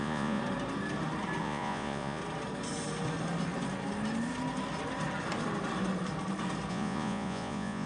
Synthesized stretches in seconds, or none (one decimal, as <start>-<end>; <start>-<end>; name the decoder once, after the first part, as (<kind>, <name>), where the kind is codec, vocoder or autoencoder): 0.0-0.4 (vocoder, Vocos); 1.4-2.2; 6.7-7.9